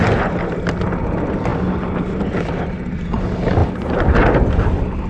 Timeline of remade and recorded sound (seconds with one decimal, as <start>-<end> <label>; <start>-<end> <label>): 0.0-5.1 recorded